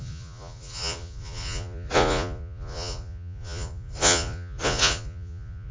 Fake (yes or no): yes